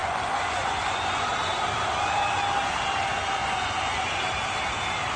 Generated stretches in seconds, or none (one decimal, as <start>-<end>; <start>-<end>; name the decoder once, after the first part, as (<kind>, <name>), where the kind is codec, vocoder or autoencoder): 0.0-1.3 (vocoder, Vocos); 3.4-4.2